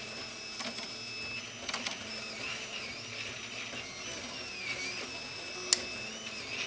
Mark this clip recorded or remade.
recorded